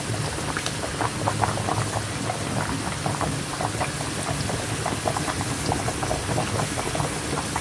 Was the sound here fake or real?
real